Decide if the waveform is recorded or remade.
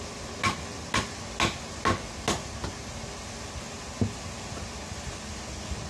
recorded